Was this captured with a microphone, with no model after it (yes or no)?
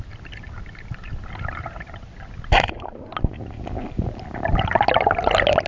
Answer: yes